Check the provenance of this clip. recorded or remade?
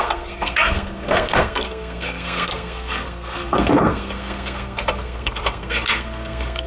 remade